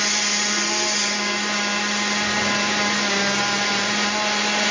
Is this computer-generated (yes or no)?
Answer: no